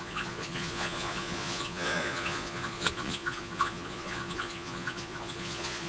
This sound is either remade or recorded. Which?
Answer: remade